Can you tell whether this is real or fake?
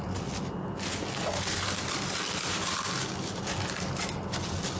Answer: real